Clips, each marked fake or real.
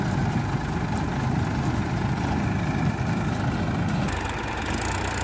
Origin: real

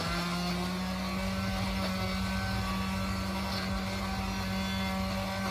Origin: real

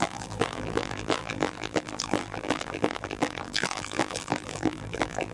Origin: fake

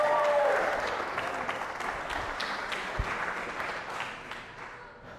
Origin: real